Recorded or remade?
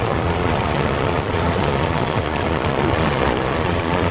remade